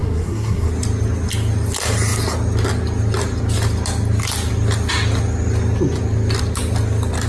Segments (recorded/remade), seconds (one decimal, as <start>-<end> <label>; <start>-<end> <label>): 0.0-0.7 remade; 0.7-7.3 recorded